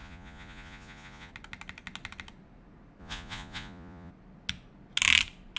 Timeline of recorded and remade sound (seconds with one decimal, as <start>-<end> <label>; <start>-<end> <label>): 0.0-1.3 remade; 1.3-3.0 recorded; 3.0-4.1 remade; 4.1-5.6 recorded